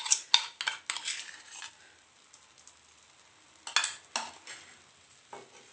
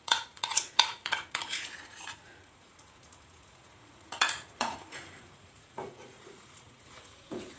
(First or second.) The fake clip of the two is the second